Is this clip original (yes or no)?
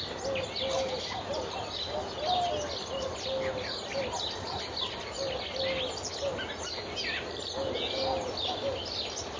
yes